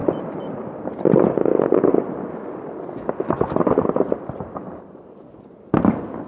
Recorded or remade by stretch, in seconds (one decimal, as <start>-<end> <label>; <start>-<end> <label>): 0.0-0.7 remade; 0.7-6.3 recorded